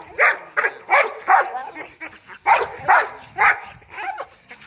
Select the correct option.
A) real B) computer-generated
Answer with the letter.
A